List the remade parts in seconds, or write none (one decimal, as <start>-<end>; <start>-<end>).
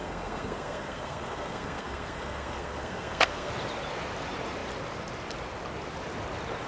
0.0-3.5